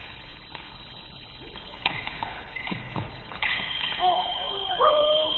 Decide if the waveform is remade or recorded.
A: remade